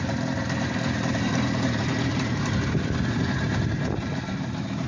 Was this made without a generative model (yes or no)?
yes